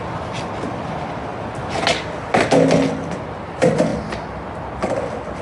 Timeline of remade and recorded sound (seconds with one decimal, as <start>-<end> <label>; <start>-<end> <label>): 0.0-1.3 remade; 1.3-3.3 recorded; 3.3-3.9 remade; 3.9-5.4 recorded